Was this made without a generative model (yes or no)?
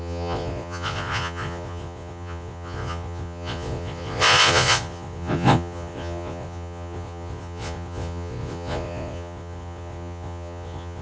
no